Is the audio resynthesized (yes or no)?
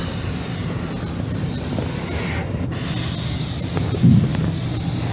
no